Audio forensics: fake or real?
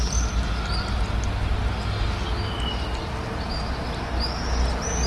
real